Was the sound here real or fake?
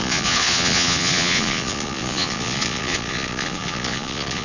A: fake